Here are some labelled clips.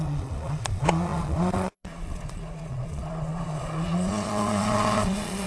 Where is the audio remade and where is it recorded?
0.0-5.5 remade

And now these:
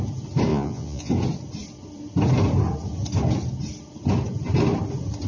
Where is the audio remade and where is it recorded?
0.0-0.5 recorded; 0.5-1.1 remade; 1.1-5.3 recorded

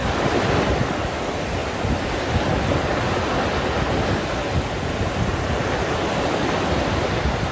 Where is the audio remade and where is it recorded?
0.0-7.5 recorded

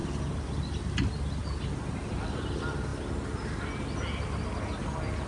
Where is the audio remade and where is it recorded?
0.0-5.3 recorded

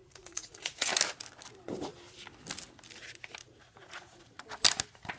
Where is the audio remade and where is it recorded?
0.0-0.9 remade; 0.9-3.4 recorded; 3.4-4.4 remade; 4.4-5.2 recorded